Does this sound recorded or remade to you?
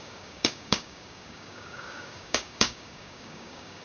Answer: remade